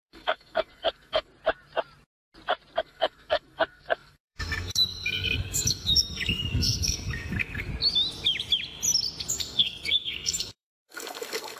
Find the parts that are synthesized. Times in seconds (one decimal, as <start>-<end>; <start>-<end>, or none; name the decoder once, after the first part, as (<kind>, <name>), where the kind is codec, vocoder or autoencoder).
0.0-1.3 (codec, SNAC); 2.8-7.7; 9.3-11.6